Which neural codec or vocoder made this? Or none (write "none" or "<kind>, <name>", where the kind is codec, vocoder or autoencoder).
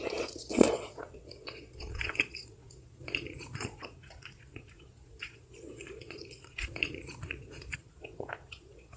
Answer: vocoder, Vocos